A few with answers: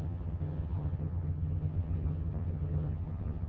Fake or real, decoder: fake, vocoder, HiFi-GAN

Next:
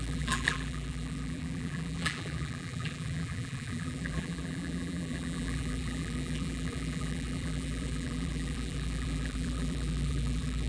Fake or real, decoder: fake, vocoder, BigVGAN v2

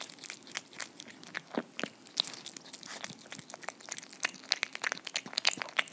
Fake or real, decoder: real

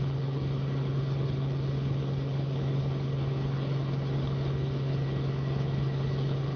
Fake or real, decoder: fake, codec, HILCodec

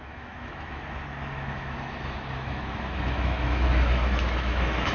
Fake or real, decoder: fake, autoencoder, DAC-VAE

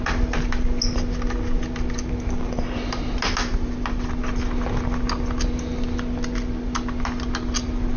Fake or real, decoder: real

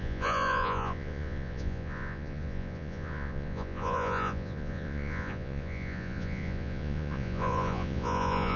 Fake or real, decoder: fake, vocoder, Vocos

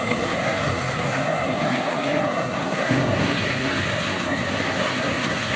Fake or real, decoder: fake, codec, SNAC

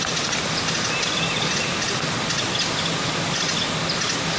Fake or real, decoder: real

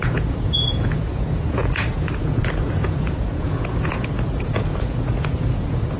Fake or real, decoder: fake, vocoder, Vocos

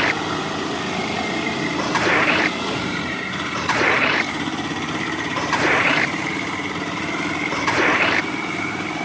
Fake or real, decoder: fake, vocoder, BigVGAN v2